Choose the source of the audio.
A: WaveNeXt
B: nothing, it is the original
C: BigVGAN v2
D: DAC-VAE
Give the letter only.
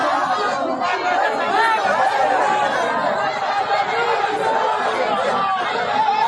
B